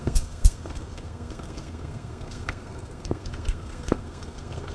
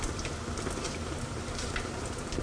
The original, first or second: second